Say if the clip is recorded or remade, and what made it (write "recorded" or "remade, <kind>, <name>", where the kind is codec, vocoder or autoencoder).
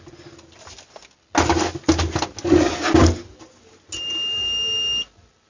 recorded